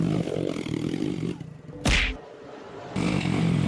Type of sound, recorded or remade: recorded